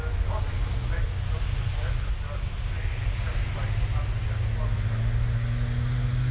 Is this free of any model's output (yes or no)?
yes